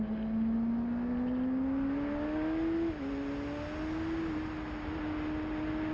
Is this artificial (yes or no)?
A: no